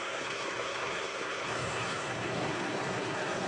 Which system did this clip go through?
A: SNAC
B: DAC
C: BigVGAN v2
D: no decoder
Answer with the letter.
A